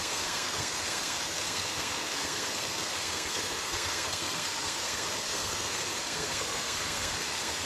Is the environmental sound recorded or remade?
remade